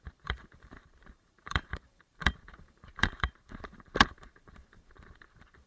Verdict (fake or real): fake